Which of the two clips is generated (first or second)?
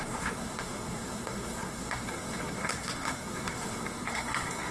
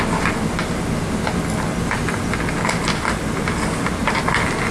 first